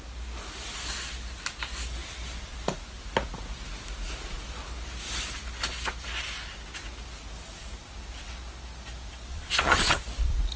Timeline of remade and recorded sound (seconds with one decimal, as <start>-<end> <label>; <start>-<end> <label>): 0.0-9.3 recorded; 9.3-9.9 remade; 9.9-10.6 recorded